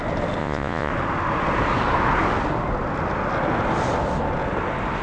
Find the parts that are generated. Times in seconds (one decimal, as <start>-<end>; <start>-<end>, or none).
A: 0.4-0.9